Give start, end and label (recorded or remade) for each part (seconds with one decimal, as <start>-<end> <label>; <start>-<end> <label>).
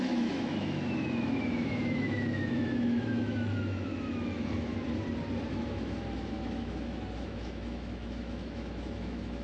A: 0.0-4.7 remade; 4.7-5.5 recorded; 5.5-9.4 remade